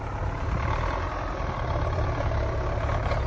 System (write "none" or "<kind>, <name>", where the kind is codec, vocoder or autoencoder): vocoder, BigVGAN v2